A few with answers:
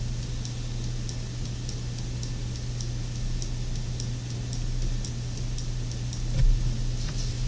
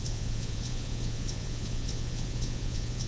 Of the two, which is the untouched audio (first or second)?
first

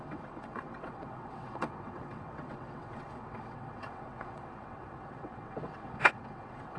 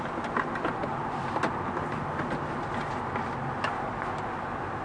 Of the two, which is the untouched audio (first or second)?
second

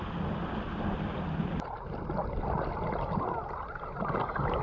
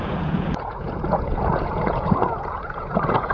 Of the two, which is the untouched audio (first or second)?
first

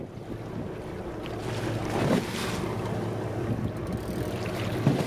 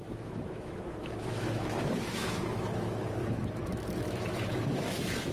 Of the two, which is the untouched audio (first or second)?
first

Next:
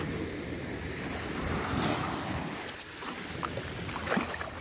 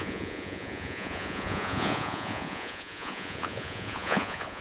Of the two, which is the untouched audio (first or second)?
first